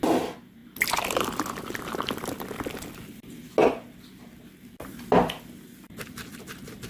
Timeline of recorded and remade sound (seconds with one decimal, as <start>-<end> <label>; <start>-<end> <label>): 0.0-6.9 recorded